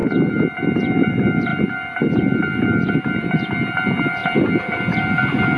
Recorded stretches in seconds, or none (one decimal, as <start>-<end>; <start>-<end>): none